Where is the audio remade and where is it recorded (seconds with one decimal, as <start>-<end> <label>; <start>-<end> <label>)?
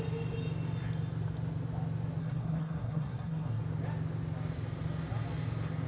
0.0-2.2 recorded; 2.2-3.6 remade; 3.6-5.9 recorded